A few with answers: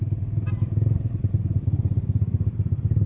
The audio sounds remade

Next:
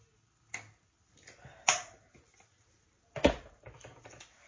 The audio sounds recorded